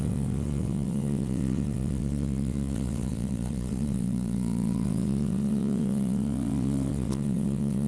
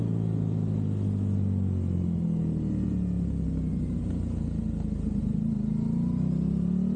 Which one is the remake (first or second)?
first